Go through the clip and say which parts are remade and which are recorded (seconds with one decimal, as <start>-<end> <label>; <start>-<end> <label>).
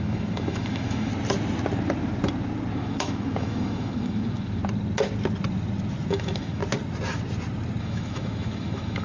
0.0-1.1 remade; 1.1-2.7 recorded; 2.7-4.6 remade; 4.6-6.1 recorded; 6.1-6.6 remade; 6.6-7.8 recorded; 7.8-9.0 remade